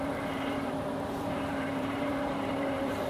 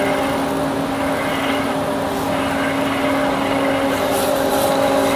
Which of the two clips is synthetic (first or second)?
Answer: first